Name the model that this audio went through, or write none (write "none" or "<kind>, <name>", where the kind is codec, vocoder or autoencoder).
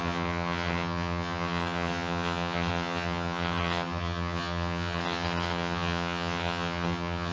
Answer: vocoder, HiFi-GAN